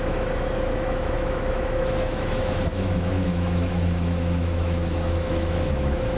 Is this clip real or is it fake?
fake